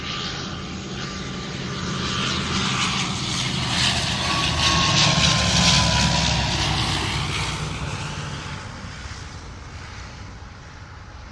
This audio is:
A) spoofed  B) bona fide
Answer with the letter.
B